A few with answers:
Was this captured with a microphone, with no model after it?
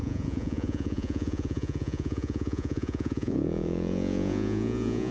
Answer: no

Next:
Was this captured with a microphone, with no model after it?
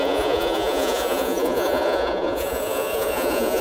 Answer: no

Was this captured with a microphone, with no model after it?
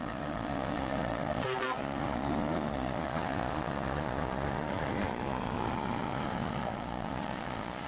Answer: no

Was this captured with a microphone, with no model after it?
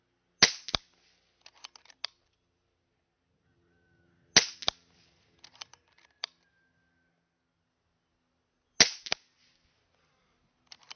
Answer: yes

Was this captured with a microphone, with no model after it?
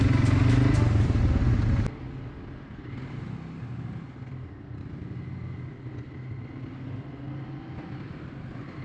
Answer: yes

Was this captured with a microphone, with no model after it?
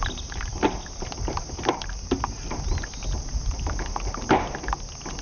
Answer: yes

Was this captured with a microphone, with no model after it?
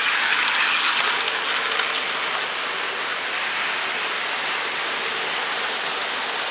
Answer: yes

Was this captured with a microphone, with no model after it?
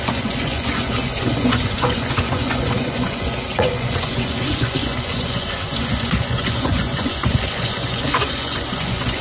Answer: no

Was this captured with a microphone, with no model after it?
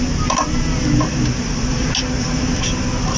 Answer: yes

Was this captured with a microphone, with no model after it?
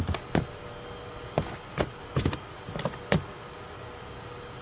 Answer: yes